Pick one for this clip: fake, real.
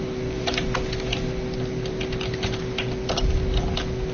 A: real